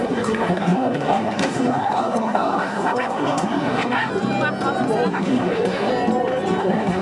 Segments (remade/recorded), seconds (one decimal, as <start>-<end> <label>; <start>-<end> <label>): 0.0-4.1 remade; 4.1-5.1 recorded; 5.1-5.9 remade; 5.9-6.6 recorded; 6.6-7.0 remade